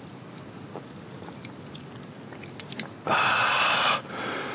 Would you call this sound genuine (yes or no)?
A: yes